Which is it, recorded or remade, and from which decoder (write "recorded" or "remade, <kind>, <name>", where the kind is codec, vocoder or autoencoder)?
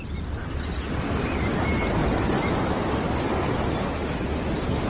recorded